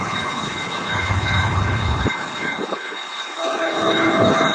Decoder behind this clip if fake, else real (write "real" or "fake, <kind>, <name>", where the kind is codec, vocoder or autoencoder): fake, codec, HILCodec